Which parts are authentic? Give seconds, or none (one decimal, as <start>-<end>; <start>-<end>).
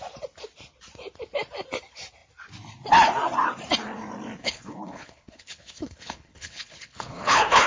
0.0-4.4